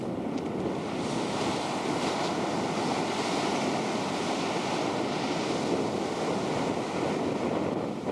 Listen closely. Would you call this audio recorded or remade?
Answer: recorded